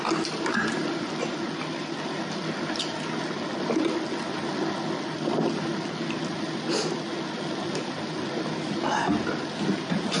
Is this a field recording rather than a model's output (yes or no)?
yes